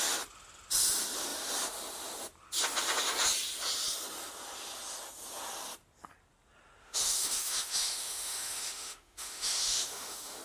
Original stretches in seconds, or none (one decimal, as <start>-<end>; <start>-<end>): 0.0-6.8